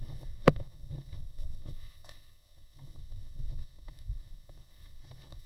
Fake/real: fake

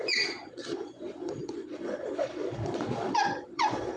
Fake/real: fake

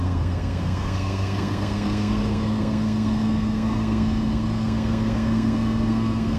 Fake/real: fake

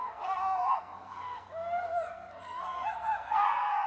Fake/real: fake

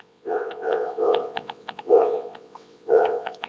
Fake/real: fake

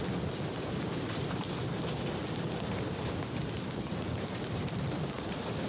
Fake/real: real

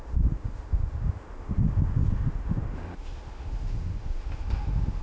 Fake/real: fake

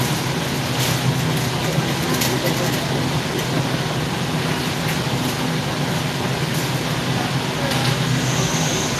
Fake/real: real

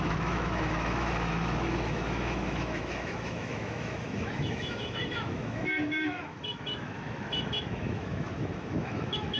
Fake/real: fake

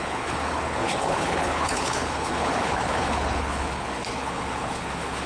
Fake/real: fake